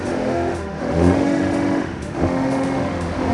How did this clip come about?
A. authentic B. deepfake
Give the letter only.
B